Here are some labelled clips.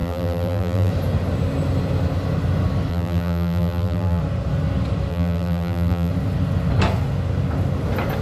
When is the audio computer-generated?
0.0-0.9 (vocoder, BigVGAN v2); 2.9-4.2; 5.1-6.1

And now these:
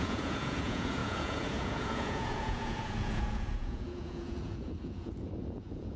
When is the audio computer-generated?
0.0-6.0 (vocoder, Vocos)